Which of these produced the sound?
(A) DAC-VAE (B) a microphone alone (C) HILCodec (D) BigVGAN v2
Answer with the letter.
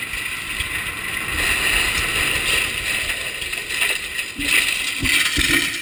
B